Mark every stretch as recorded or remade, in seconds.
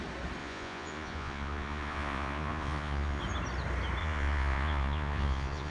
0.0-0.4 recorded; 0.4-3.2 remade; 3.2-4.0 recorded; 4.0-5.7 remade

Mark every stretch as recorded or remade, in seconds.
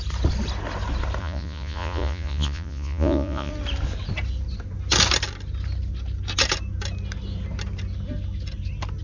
0.0-1.2 recorded; 1.2-3.5 remade; 3.5-9.0 recorded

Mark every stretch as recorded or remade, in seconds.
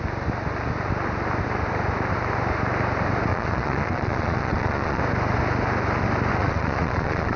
0.0-3.3 recorded; 3.3-5.0 remade; 5.0-6.4 recorded; 6.4-7.4 remade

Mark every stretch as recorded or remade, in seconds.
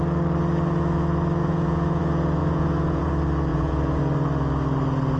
0.0-1.4 recorded; 1.4-2.0 remade; 2.0-2.4 recorded; 2.4-3.1 remade; 3.1-3.5 recorded; 3.5-4.0 remade; 4.0-5.2 recorded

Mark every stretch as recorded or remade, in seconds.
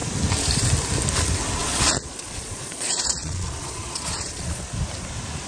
0.0-1.6 recorded; 1.6-4.6 remade; 4.6-5.5 recorded